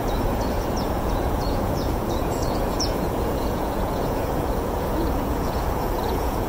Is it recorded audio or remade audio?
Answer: remade